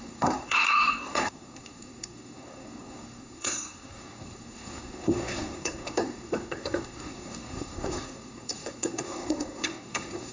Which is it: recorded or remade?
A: remade